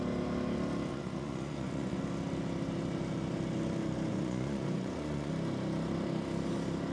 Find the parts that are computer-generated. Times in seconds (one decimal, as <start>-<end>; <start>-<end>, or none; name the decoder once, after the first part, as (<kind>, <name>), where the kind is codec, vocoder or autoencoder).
0.9-2.0 (vocoder, Vocos); 4.1-5.3